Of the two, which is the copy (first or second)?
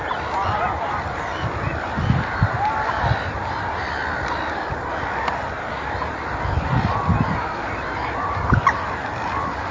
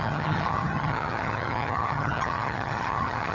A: second